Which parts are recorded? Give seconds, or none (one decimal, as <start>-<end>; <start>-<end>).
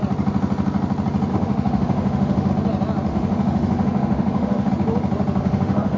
0.0-1.3; 2.5-3.1; 4.7-5.4